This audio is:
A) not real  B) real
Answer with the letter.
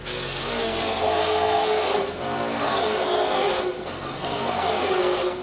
A